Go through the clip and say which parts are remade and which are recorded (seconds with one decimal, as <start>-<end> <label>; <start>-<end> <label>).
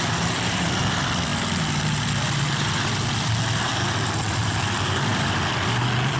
0.0-6.2 remade